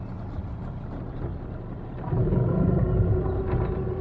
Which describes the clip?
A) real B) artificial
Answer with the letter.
A